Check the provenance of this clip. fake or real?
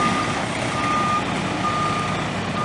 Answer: real